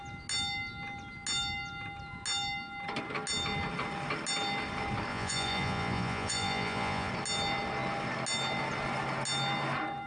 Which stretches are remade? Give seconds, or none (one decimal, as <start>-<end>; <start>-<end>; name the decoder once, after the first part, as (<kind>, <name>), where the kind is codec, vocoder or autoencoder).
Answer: 5.1-7.1 (vocoder, Vocos)